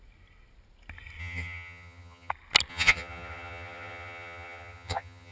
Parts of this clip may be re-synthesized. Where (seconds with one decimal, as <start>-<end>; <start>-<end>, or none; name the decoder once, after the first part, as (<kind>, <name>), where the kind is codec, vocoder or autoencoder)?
1.2-2.3 (vocoder, HiFi-GAN); 2.7-5.3